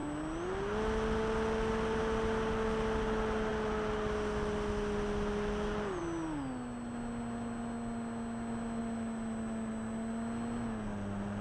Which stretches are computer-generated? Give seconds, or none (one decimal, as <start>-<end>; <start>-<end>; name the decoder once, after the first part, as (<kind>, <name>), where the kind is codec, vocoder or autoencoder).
none